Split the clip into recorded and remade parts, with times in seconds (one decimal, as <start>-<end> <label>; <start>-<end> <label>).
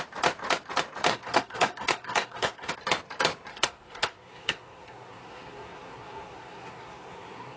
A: 0.0-1.1 recorded; 1.1-2.7 remade; 2.7-3.5 recorded; 3.5-7.6 remade